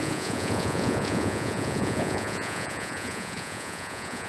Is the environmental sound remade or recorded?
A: remade